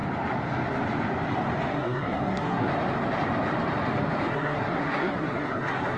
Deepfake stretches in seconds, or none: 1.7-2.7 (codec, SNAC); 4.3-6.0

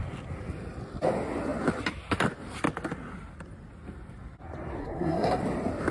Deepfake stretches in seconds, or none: 4.8-5.4 (codec, SNAC)

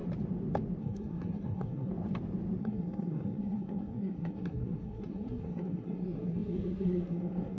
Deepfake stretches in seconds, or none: 0.8-1.9 (codec, SNAC); 2.6-7.6

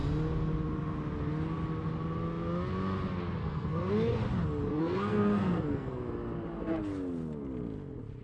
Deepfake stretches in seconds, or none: 3.4-3.9 (codec, SNAC); 4.7-6.0

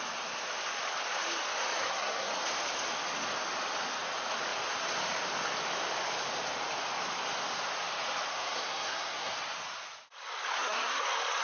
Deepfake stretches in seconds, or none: 1.8-2.3 (codec, SNAC); 8.3-9.3; 10.5-11.0

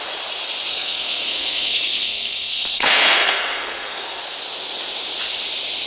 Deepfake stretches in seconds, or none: 0.7-4.2 (codec, SNAC)

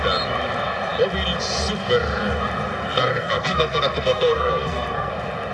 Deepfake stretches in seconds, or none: 2.7-5.1 (codec, SNAC)

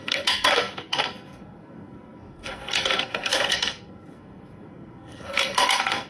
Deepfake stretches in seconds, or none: 0.0-6.1 (codec, SNAC)